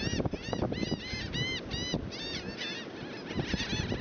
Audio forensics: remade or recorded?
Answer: recorded